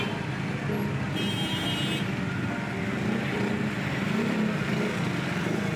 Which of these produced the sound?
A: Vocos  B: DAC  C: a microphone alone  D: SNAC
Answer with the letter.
C